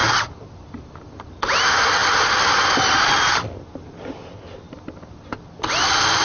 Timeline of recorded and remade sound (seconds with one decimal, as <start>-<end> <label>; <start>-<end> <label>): 0.0-6.2 recorded